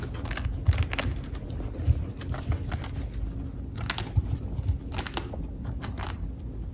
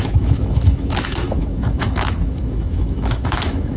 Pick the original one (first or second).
first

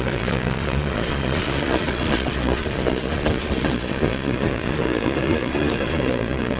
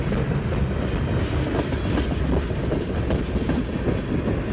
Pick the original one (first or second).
second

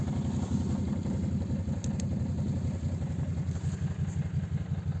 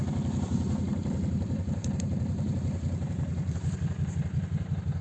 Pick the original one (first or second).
first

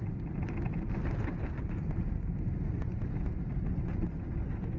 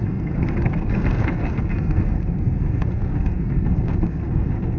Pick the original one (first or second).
first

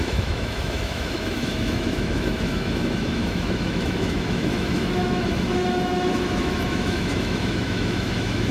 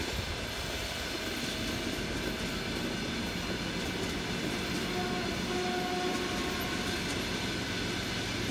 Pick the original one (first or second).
second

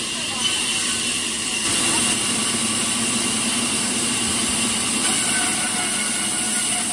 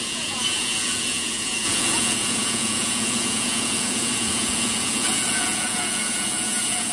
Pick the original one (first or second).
first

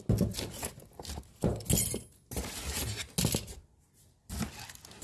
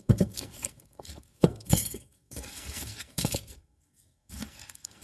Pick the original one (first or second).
first